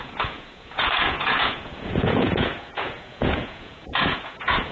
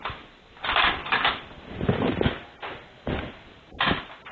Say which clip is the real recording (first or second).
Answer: second